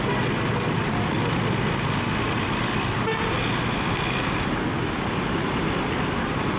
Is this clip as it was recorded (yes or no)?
yes